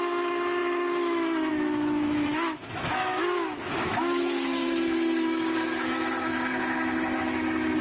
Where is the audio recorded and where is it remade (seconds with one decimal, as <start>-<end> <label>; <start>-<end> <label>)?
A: 0.0-7.8 remade